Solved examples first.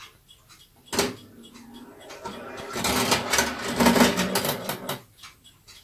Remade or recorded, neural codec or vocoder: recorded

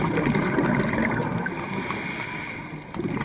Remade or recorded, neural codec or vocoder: recorded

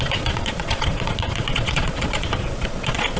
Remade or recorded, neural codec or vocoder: remade, vocoder, Vocos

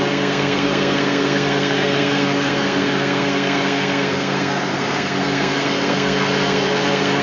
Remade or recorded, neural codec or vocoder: remade, codec, SNAC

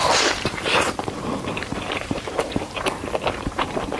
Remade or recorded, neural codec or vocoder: remade, vocoder, BigVGAN v2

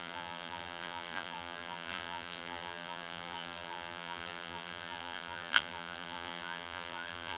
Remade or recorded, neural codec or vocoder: remade, vocoder, BigVGAN v2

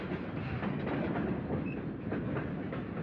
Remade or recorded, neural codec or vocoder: recorded